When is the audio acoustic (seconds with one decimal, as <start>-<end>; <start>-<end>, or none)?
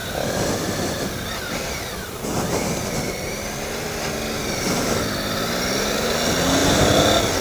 0.0-7.4